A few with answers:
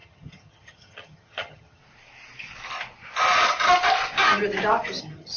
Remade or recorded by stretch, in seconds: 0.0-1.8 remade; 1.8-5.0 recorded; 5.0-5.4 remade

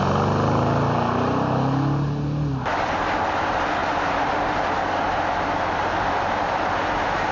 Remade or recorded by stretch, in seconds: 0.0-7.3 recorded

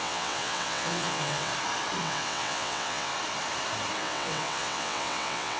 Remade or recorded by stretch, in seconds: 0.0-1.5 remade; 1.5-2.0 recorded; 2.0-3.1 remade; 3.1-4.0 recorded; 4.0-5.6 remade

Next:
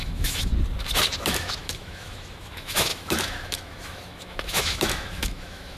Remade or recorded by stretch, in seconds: 0.0-0.5 remade; 0.5-1.2 recorded; 1.2-5.8 remade